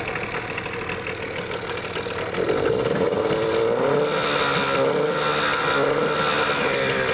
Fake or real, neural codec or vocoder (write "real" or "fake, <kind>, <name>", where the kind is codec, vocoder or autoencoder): real